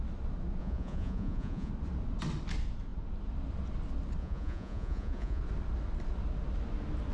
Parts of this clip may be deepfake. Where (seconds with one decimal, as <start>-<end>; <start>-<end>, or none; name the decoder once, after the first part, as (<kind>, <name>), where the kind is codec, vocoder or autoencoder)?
0.6-1.7 (vocoder, Vocos); 4.2-5.4